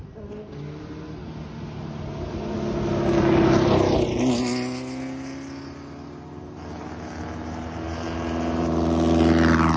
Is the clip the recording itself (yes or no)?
yes